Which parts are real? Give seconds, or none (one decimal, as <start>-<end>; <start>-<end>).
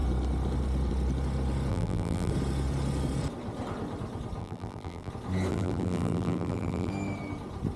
0.0-1.7; 2.3-4.4; 5.1-5.5; 6.9-7.8